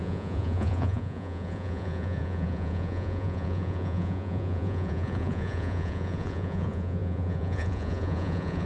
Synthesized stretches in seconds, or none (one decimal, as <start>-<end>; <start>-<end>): 0.0-8.7